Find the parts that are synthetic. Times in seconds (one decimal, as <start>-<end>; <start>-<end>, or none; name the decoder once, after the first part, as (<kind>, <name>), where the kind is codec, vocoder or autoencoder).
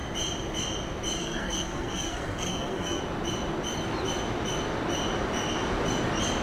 1.2-3.0 (codec, SNAC)